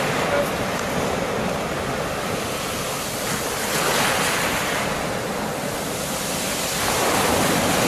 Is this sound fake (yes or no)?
no